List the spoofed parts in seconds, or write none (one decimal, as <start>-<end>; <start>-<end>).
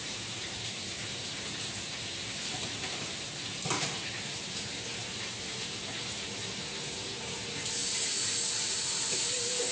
none